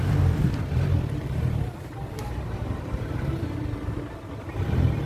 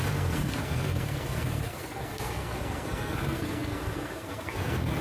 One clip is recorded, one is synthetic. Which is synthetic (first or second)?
second